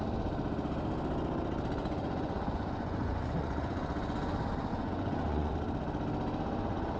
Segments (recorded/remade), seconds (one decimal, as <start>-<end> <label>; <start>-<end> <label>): 0.0-1.8 recorded; 1.8-4.3 remade; 4.3-4.7 recorded; 4.7-5.5 remade; 5.5-7.0 recorded